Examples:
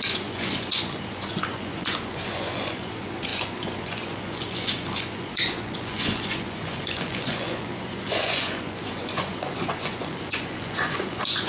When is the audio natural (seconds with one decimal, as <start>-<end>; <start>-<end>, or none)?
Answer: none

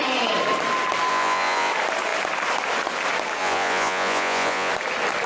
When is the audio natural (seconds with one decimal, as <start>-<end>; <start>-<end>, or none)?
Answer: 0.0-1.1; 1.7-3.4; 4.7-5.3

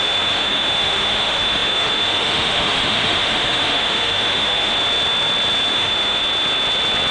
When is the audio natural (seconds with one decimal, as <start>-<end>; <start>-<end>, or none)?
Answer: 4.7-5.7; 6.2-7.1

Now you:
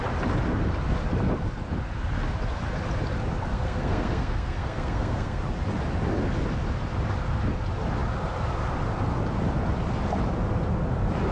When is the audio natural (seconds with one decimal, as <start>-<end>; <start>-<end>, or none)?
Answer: 0.0-3.5; 5.4-11.3